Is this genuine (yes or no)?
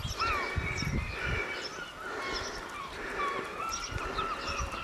yes